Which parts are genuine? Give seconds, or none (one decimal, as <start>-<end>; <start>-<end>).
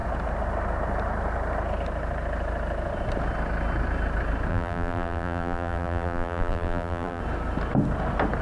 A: 0.0-4.5; 7.2-8.4